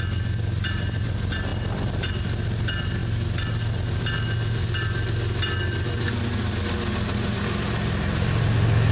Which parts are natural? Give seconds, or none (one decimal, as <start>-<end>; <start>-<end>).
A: 0.0-8.9